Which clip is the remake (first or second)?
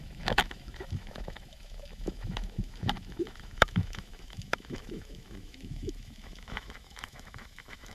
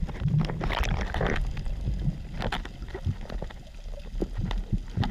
first